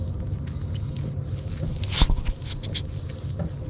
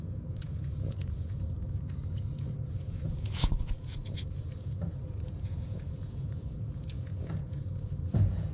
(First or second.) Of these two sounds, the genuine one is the first